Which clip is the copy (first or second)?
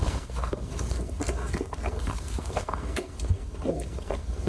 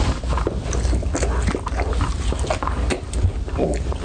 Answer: first